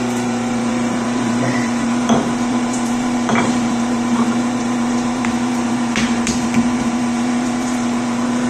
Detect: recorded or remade remade